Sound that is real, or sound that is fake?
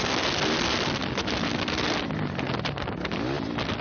real